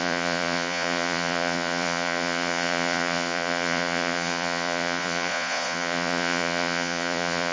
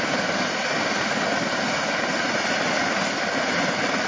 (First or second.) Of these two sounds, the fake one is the first